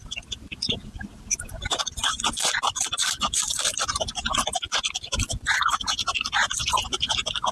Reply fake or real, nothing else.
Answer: fake